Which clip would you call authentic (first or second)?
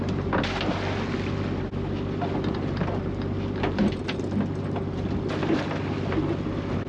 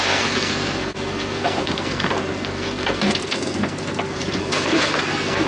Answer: first